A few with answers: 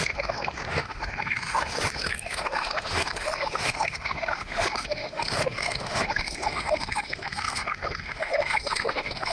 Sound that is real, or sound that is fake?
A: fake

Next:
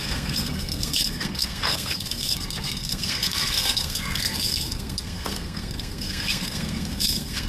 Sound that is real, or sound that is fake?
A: fake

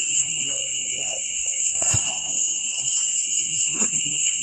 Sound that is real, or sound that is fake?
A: fake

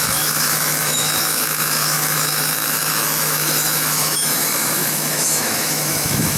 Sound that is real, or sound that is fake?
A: fake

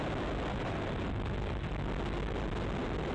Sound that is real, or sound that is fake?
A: real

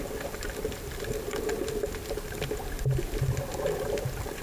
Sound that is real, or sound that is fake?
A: real